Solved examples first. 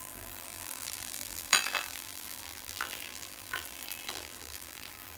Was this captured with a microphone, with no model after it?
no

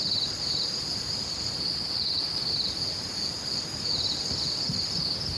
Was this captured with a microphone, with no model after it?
yes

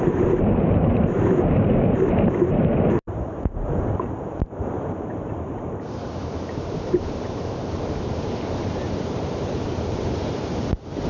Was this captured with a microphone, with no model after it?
no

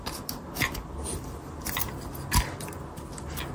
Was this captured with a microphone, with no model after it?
yes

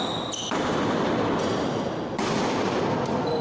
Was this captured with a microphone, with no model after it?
yes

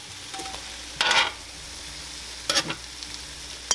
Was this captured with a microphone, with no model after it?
yes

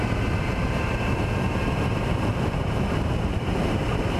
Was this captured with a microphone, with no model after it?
no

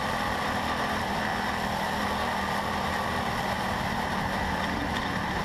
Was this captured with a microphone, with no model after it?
no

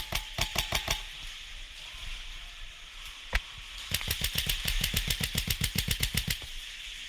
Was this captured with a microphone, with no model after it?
no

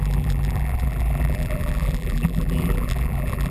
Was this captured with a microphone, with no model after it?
no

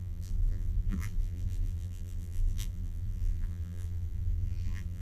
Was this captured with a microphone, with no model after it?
no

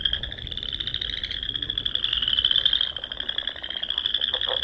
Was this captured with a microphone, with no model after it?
yes